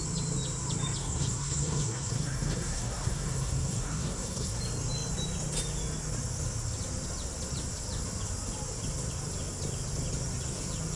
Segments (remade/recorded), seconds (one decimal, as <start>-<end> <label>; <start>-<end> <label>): 0.0-1.0 recorded; 1.0-4.6 remade; 4.6-11.0 recorded